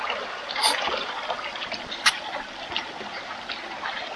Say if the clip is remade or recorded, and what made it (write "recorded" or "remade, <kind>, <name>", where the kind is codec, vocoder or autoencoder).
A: recorded